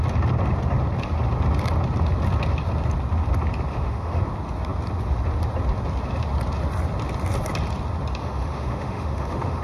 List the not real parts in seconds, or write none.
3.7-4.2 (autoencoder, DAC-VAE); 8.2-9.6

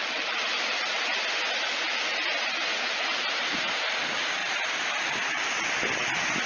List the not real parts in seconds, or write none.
0.0-1.2 (vocoder, BigVGAN v2); 2.7-3.7; 4.4-5.5

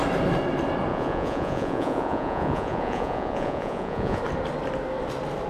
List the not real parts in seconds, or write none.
0.9-4.2 (vocoder, Vocos)

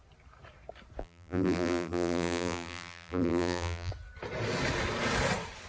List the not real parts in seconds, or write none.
1.0-3.9 (vocoder, BigVGAN v2)

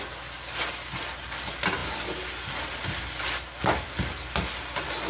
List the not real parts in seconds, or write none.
none

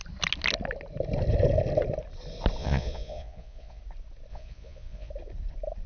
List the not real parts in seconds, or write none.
2.6-3.8 (vocoder, Vocos); 4.3-5.1